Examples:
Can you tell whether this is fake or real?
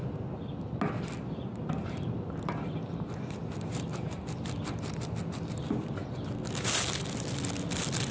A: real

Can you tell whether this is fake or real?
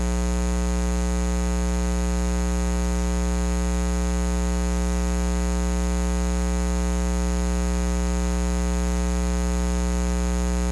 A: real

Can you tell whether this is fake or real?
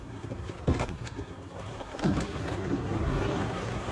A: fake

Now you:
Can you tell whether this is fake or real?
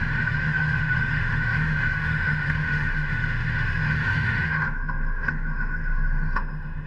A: fake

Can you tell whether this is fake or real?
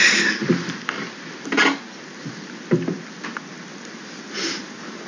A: real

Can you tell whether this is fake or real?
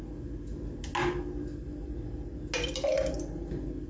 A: real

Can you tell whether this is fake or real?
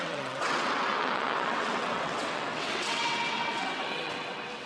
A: fake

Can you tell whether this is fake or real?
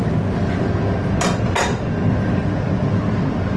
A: real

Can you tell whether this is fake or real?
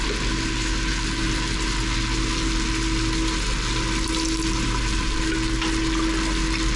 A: real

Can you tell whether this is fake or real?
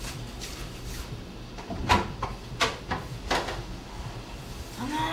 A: real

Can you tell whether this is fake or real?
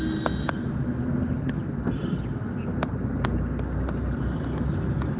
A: real